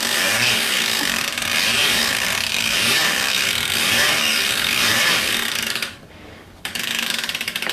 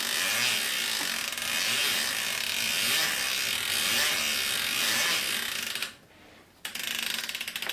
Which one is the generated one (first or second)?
first